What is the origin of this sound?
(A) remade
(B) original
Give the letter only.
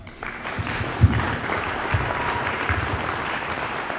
A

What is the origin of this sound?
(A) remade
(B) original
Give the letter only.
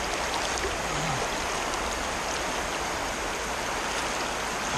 B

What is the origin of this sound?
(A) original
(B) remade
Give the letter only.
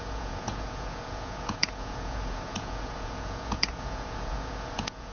B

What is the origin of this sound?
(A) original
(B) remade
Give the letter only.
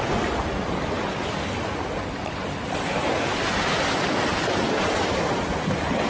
A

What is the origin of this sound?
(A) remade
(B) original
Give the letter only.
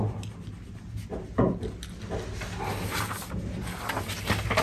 B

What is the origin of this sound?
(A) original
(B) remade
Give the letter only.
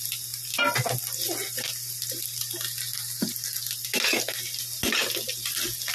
A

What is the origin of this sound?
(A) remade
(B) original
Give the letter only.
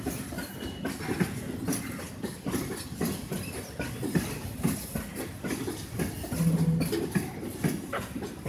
B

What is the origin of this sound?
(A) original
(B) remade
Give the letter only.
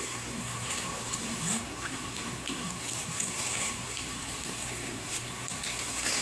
B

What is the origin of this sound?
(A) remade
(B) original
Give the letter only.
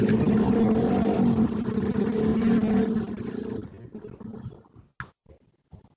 B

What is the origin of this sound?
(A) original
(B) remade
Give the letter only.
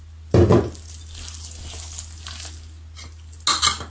A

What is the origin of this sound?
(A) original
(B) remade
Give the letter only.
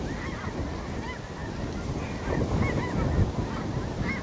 A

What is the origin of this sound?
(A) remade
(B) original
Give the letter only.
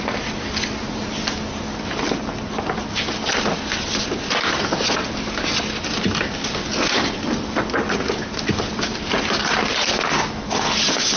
B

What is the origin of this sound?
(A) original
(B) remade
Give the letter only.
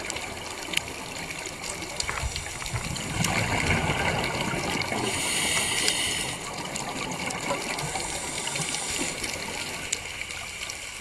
B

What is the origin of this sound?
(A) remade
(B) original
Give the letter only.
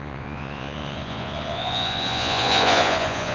A